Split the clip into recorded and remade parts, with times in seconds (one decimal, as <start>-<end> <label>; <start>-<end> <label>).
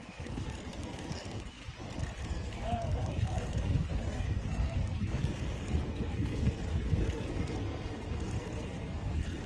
0.0-1.6 remade; 1.6-2.2 recorded; 2.2-9.5 remade